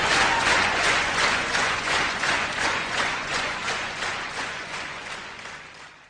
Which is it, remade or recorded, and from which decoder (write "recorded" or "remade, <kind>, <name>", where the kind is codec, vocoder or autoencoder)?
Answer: remade, vocoder, Vocos